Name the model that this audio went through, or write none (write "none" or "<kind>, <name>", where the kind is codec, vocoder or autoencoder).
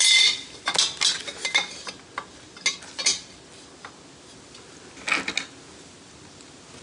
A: none